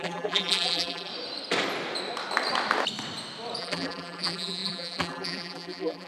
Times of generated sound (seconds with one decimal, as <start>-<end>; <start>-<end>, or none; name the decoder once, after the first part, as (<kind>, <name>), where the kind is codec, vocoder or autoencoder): 0.0-1.1 (vocoder, BigVGAN v2); 3.6-6.1